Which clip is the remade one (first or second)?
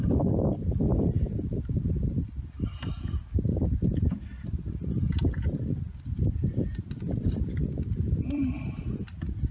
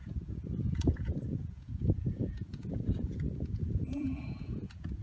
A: second